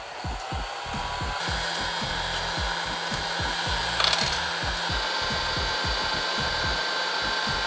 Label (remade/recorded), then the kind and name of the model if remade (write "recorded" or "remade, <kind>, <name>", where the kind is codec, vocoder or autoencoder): recorded